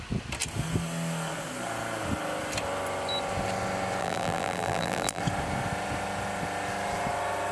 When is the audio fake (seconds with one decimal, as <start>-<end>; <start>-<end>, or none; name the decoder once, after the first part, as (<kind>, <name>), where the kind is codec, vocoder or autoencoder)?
4.0-5.2 (vocoder, BigVGAN v2)